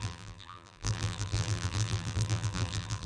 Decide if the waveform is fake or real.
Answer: fake